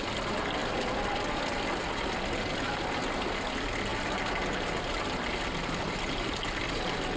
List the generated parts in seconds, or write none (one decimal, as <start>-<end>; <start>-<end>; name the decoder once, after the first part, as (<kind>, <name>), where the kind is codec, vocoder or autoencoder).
none